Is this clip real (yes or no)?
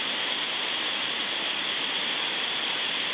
yes